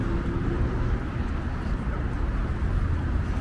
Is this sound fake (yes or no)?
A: no